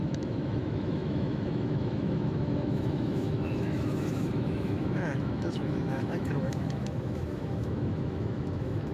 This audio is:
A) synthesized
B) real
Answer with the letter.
A